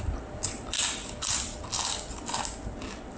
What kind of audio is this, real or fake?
real